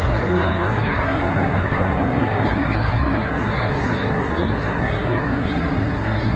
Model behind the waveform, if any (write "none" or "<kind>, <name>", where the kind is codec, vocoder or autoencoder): codec, SNAC